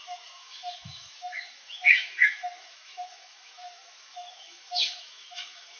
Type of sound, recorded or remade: remade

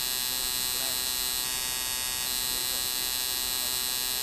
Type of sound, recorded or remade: recorded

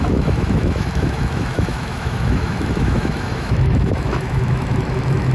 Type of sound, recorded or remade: remade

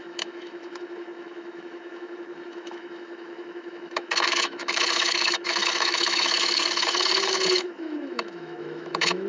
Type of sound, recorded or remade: remade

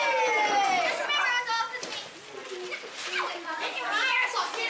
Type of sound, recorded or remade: recorded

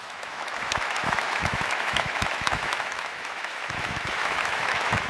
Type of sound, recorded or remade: remade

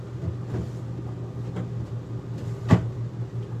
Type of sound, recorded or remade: recorded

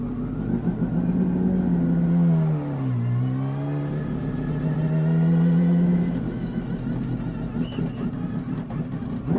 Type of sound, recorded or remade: recorded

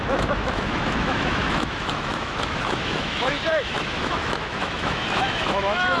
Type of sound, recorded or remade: remade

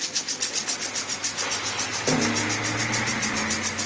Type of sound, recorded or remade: recorded